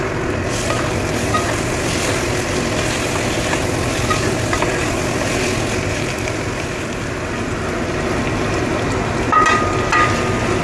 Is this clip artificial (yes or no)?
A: no